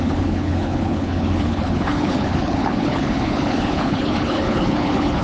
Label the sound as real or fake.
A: fake